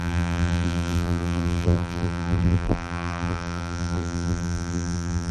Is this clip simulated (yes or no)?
yes